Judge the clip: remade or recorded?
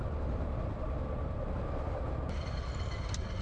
recorded